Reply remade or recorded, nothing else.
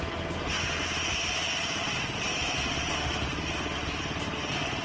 recorded